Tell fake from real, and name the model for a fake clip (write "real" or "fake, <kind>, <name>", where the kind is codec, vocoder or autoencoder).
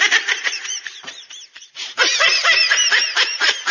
fake, vocoder, BigVGAN v2